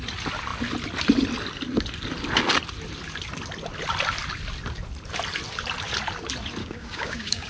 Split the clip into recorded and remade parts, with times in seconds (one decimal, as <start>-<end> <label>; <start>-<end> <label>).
0.0-6.6 recorded; 6.6-7.5 remade